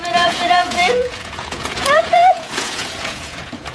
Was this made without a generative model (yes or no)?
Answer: no